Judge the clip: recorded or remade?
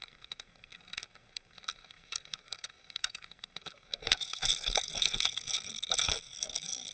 remade